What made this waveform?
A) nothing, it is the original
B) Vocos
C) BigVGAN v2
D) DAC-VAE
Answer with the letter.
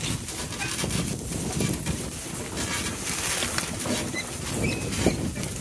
A